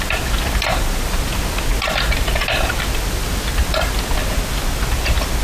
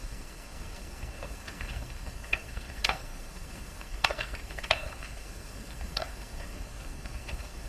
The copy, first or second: second